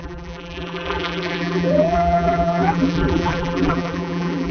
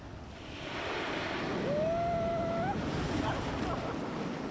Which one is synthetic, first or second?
first